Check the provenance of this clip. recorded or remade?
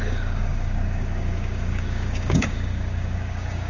remade